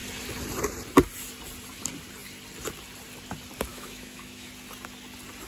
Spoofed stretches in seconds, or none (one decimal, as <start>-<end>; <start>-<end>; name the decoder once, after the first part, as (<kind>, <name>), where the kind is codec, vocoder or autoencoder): 3.7-4.5 (autoencoder, DAC-VAE)

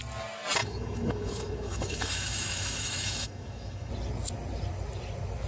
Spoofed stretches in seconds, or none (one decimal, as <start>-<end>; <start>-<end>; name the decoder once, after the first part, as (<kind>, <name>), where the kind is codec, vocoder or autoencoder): 0.6-3.9 (autoencoder, DAC-VAE)

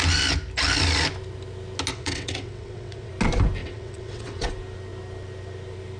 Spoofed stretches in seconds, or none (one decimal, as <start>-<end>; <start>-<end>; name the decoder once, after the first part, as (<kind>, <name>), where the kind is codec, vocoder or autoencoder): 1.9-3.1 (vocoder, WaveNeXt); 3.6-4.5

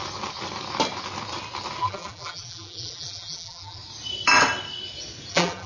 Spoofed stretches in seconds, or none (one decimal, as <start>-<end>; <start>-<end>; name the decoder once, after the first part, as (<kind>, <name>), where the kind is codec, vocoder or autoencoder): 1.8-3.8 (vocoder, BigVGAN v2); 5.3-5.7

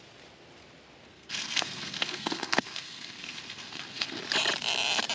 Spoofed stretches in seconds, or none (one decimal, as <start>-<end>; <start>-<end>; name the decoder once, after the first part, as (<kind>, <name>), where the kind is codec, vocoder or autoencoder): 1.1-4.2 (codec, SNAC)

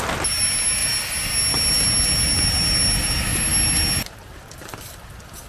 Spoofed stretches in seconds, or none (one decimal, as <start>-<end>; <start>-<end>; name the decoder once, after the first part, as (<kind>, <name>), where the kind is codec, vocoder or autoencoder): none